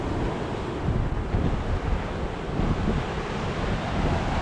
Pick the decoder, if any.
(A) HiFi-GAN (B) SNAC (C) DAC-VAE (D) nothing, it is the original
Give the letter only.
D